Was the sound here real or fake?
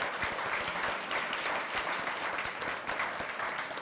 real